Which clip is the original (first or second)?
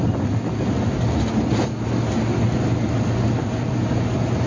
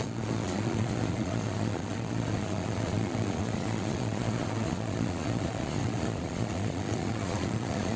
first